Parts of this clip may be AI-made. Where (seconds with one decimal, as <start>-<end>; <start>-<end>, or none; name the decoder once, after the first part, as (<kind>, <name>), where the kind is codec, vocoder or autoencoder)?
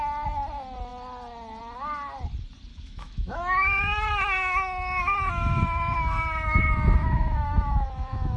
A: 2.7-6.6 (autoencoder, DAC-VAE); 7.0-8.4